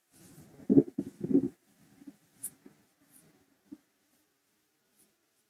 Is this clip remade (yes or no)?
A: no